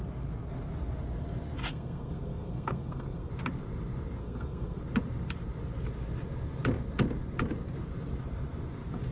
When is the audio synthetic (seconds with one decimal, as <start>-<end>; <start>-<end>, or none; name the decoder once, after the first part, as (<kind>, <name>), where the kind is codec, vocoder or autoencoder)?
1.7-3.3 (codec, SNAC); 4.2-4.8

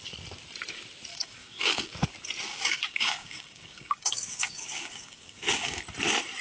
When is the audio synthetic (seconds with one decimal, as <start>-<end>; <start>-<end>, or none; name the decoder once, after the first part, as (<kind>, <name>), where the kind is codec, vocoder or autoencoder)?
1.1-1.9 (codec, DAC); 2.5-5.8

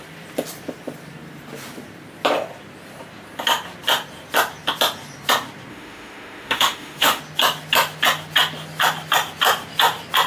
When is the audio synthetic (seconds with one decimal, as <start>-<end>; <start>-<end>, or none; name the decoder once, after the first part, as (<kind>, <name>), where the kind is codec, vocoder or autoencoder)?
5.7-7.2 (autoencoder, DAC-VAE)

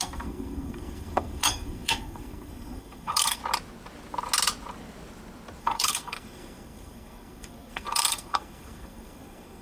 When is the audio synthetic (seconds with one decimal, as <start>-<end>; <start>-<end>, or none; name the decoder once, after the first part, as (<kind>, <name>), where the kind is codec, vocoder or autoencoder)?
0.0-3.4 (codec, SNAC); 5.6-9.6

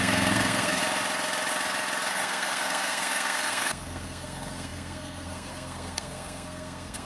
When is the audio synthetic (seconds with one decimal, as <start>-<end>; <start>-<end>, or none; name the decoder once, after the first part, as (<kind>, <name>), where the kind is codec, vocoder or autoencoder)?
0.0-0.8 (codec, SNAC); 2.1-7.1

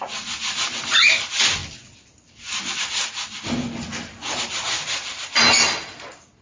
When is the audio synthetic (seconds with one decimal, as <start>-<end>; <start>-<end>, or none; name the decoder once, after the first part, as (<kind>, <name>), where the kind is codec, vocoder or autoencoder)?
none

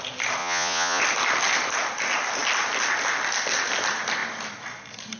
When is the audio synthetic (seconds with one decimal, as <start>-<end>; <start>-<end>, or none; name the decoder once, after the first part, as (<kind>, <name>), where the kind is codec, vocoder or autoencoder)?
0.4-1.0 (vocoder, Vocos)